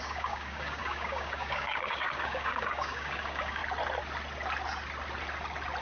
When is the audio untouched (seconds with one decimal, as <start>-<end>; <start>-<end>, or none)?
3.6-5.8